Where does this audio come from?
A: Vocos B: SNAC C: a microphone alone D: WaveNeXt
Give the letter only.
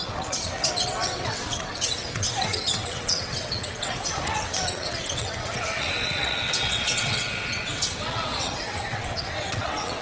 D